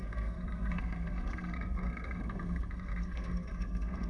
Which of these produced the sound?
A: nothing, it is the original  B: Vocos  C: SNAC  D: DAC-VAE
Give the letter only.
C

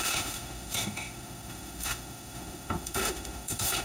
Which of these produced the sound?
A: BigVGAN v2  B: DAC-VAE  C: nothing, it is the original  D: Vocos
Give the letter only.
B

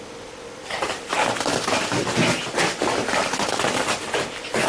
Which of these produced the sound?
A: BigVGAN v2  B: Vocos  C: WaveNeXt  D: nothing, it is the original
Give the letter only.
D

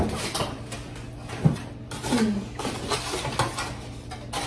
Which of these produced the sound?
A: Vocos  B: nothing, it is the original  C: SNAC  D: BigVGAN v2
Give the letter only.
B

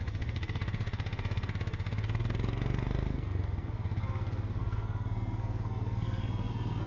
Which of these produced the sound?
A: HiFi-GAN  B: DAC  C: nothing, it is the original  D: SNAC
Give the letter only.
D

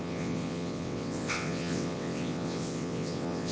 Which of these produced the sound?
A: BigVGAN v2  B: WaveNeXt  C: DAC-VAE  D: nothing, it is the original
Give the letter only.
B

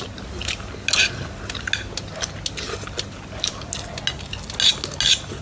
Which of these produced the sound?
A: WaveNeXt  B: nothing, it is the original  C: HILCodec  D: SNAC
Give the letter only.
B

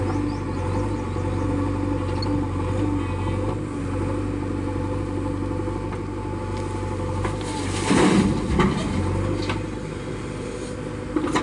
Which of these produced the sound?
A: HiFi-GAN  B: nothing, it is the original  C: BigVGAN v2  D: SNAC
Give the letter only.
B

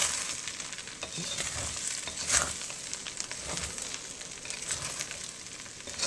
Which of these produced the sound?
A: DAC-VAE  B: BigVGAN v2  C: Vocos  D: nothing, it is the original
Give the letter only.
D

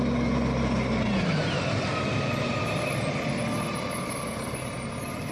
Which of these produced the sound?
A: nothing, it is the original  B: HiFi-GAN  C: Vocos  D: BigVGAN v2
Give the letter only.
A